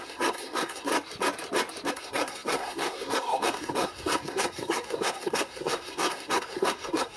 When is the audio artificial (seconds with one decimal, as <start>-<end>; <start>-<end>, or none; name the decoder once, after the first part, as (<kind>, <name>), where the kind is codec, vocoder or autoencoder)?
0.0-0.9 (codec, SNAC); 1.9-7.2